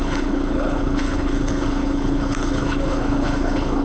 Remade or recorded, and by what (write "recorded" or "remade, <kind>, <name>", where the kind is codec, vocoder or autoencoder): remade, codec, HILCodec